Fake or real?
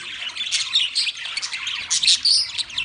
real